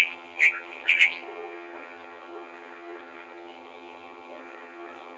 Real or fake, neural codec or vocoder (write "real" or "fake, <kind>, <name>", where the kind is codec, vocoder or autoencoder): fake, vocoder, HiFi-GAN